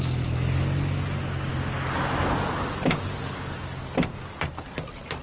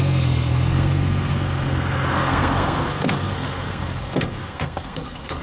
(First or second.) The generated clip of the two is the second